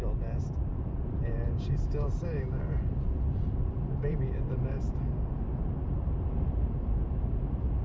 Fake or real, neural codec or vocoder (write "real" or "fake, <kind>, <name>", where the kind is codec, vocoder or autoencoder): fake, vocoder, BigVGAN v2